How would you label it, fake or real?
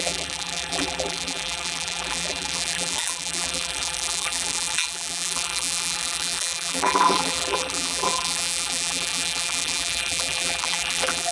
fake